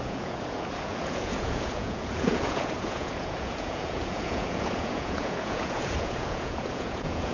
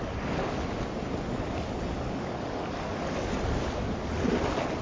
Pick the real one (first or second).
second